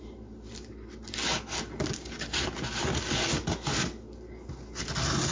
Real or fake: real